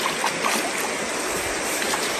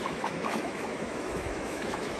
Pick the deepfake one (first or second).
second